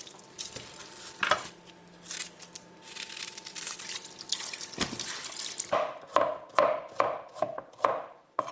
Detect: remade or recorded recorded